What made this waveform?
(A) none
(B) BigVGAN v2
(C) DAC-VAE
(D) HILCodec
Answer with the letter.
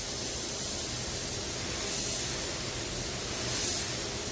A